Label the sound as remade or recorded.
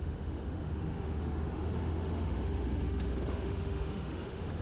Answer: remade